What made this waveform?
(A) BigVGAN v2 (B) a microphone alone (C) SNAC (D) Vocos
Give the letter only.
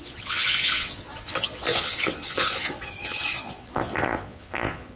D